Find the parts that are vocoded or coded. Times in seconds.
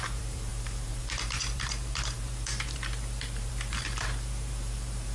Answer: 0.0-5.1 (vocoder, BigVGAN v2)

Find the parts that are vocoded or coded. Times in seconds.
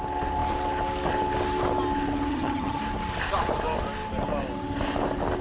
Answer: 2.3-2.8 (vocoder, HiFi-GAN)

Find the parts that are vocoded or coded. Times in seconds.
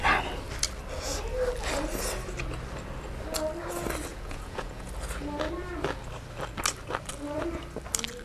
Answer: 4.1-4.9 (vocoder, Vocos)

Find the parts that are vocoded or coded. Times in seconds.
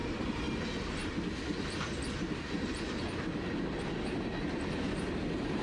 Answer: none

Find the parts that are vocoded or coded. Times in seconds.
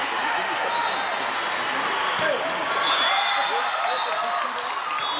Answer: none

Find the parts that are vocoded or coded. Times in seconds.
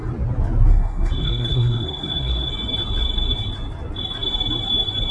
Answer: 0.7-2.5 (codec, SNAC)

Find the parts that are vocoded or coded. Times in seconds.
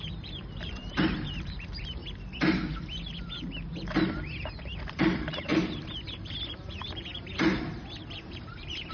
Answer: 0.0-2.0 (vocoder, BigVGAN v2); 4.8-8.9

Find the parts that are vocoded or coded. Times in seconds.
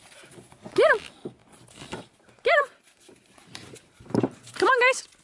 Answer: 1.4-4.5 (vocoder, BigVGAN v2)